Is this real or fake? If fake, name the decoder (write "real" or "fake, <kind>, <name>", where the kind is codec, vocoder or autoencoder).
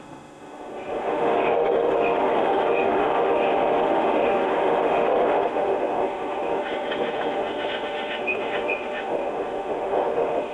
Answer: fake, autoencoder, DAC-VAE